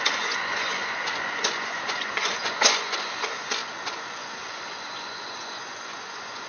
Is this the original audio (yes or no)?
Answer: no